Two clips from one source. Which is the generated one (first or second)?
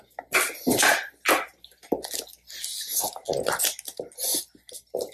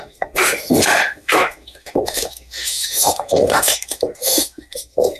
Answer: second